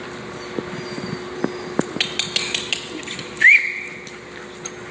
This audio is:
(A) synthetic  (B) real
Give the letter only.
B